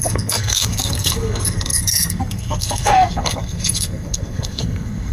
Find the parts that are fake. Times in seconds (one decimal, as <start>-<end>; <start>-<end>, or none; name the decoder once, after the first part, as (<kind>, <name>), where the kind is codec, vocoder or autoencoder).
0.0-5.1 (codec, SNAC)